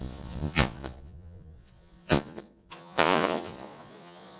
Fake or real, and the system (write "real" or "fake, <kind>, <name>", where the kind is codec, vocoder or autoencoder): fake, vocoder, Vocos